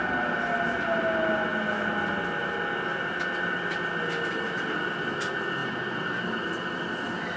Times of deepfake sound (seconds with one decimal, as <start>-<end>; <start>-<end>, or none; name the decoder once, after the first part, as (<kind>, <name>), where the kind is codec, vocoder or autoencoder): none